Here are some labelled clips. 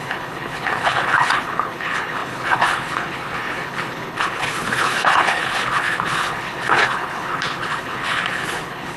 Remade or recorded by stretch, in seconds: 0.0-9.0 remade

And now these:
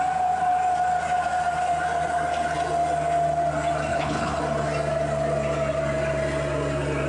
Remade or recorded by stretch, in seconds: 0.0-3.9 recorded; 3.9-4.4 remade; 4.4-7.1 recorded